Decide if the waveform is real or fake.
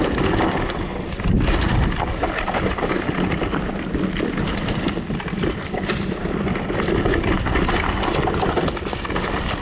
real